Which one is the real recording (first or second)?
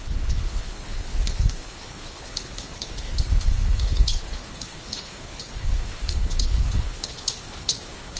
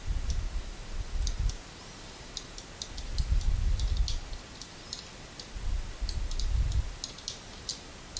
second